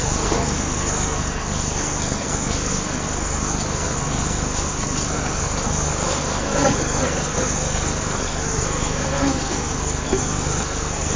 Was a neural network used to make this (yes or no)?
yes